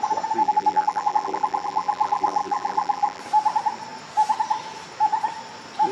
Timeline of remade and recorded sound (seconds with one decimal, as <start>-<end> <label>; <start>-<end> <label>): 0.0-0.4 recorded; 0.4-3.2 remade; 3.2-5.9 recorded